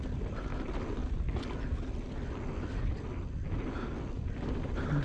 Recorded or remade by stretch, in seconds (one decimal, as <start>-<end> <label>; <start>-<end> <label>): 0.0-0.5 remade; 0.5-2.8 recorded; 2.8-5.0 remade

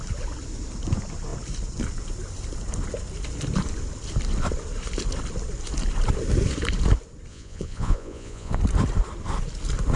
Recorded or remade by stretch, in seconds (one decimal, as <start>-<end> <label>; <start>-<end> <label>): 0.0-7.3 recorded; 7.3-8.6 remade; 8.6-10.0 recorded

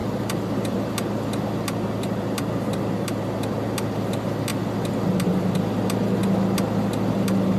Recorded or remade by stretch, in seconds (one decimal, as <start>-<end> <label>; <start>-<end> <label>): 0.0-0.9 remade; 0.9-7.6 recorded

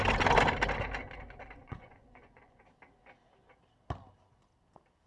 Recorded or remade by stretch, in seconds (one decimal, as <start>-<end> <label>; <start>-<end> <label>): 0.0-1.6 recorded; 1.6-2.6 remade; 2.6-5.1 recorded

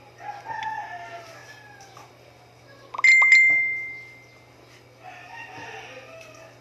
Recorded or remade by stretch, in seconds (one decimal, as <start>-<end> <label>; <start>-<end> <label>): 0.0-6.6 recorded

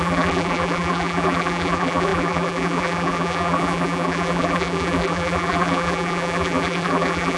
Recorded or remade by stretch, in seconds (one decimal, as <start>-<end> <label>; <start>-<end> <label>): 0.0-7.4 remade